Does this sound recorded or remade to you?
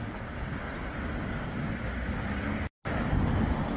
recorded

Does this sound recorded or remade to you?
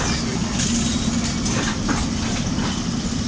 recorded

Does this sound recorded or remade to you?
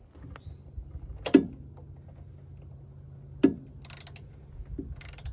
recorded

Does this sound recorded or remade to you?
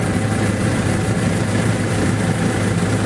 remade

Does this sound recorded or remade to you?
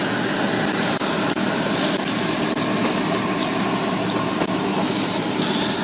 recorded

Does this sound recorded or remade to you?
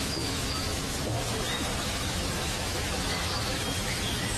remade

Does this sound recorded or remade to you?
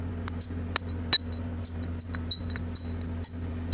recorded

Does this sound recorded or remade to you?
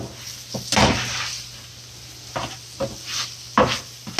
recorded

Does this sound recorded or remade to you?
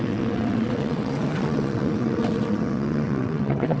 remade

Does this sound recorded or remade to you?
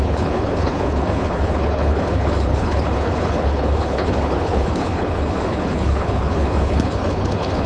remade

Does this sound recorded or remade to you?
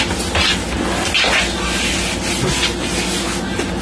recorded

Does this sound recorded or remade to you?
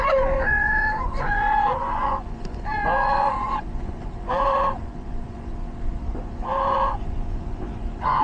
remade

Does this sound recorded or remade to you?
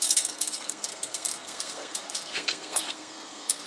remade